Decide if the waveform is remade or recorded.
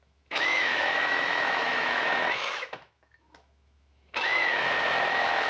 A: remade